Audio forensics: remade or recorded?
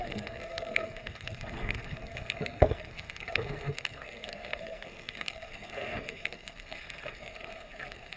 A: remade